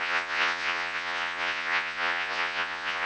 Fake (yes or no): yes